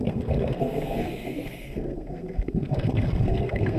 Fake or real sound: fake